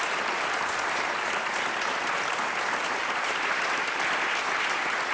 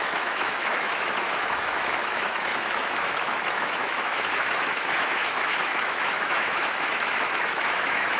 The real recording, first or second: first